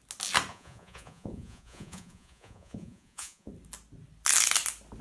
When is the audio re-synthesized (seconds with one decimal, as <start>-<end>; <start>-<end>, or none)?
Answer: 0.5-3.5

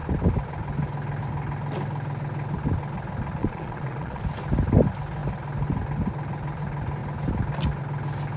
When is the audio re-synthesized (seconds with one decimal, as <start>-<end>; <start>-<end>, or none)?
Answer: 3.4-4.2

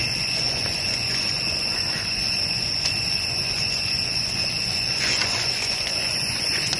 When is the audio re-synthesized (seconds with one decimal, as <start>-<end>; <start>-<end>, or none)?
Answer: 0.0-6.8

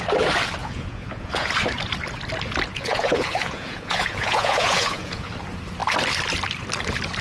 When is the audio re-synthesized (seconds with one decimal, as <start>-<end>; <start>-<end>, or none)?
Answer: 0.6-1.5; 2.7-5.3

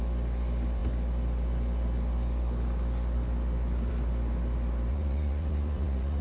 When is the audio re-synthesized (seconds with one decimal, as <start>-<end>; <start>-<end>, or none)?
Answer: 4.9-6.2

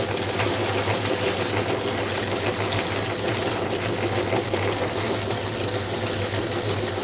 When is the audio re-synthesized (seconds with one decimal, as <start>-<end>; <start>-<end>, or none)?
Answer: none

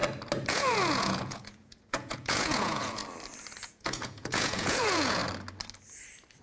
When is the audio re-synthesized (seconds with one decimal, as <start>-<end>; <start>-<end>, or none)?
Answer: 0.5-3.0; 3.6-5.2

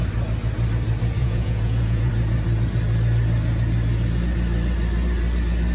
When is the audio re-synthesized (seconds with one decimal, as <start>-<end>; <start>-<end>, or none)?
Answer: 1.2-2.1